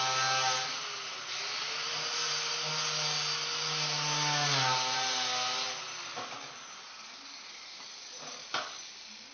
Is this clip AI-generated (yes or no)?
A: no